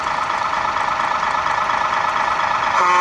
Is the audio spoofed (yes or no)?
no